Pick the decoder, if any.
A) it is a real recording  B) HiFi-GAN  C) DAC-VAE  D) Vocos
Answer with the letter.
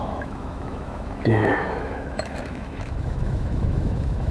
C